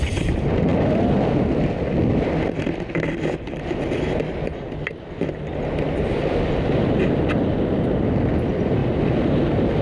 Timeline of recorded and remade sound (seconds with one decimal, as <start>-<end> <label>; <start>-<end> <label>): 0.0-9.8 recorded